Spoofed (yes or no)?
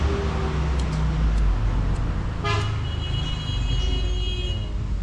no